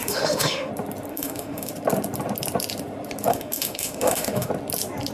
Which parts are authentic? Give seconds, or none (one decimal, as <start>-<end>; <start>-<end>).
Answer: 0.7-1.1; 1.7-3.3; 4.5-5.1

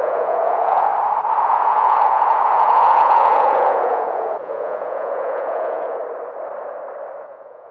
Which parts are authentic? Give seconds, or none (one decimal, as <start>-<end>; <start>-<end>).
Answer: 0.9-1.4; 6.0-7.2

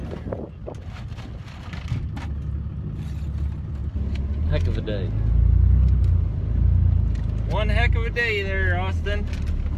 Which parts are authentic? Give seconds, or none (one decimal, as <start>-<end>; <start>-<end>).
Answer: 0.0-9.8

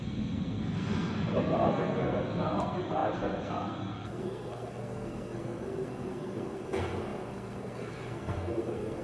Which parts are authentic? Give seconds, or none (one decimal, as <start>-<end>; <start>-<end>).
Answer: none

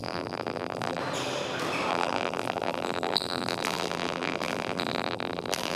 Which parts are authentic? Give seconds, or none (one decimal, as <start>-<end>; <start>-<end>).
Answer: 1.0-1.9

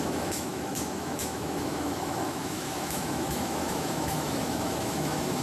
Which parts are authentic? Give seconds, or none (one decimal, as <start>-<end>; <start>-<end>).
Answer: none

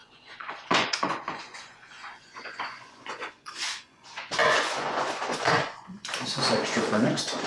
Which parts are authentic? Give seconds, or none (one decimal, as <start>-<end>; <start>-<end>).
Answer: none